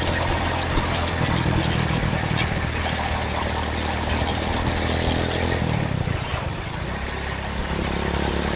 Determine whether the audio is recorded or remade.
recorded